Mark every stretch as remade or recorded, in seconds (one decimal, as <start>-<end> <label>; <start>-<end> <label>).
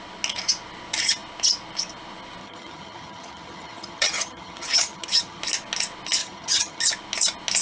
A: 0.0-2.4 recorded; 2.4-5.4 remade; 5.4-6.2 recorded; 6.2-6.8 remade; 6.8-7.6 recorded